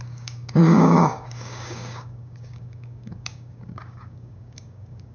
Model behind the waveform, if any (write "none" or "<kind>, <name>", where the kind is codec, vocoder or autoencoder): codec, DAC